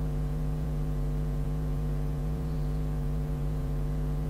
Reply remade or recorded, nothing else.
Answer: remade